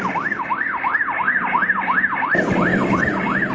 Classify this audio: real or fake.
real